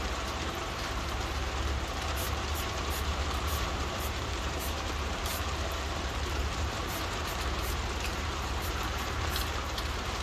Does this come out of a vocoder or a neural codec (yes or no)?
yes